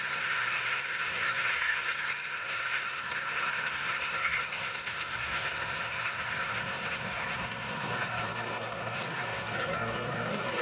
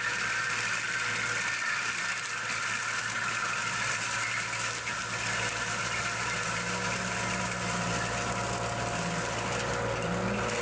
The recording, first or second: second